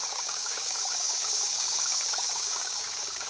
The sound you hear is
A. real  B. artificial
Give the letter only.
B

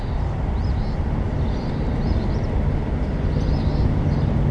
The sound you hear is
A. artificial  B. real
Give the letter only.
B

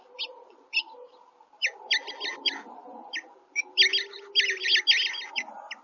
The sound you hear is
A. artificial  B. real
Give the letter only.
B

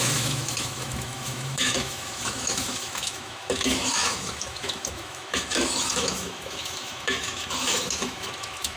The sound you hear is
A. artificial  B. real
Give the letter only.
A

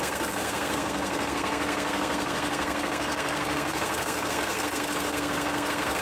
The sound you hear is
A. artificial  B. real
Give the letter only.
A